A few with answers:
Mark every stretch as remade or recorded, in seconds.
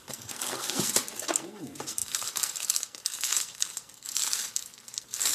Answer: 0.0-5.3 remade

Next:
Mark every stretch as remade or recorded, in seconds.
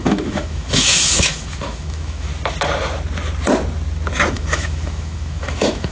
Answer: 0.0-2.3 remade; 2.3-4.3 recorded; 4.3-5.9 remade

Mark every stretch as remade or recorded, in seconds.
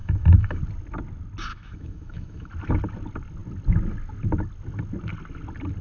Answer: 0.0-0.6 remade; 0.6-1.5 recorded; 1.5-2.5 remade; 2.5-5.8 recorded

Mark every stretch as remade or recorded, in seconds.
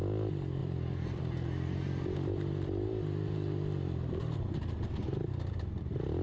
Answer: 0.0-0.6 recorded; 0.6-1.2 remade; 1.2-6.2 recorded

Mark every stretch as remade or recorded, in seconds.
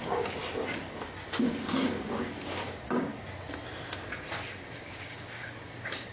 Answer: 0.0-0.4 remade; 0.4-1.3 recorded; 1.3-3.1 remade; 3.1-4.7 recorded; 4.7-6.1 remade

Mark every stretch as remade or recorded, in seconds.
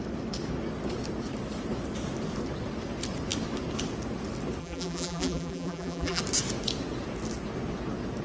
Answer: 0.0-4.6 recorded; 4.6-6.2 remade; 6.2-8.2 recorded